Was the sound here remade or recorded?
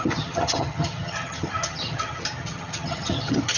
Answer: remade